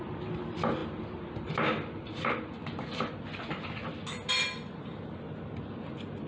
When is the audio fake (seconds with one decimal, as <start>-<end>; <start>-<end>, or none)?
none